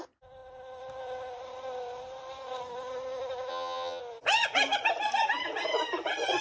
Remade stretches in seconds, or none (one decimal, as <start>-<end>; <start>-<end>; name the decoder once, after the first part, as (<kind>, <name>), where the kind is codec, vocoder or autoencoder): 3.5-4.0 (vocoder, HiFi-GAN)